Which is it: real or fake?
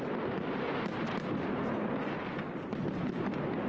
real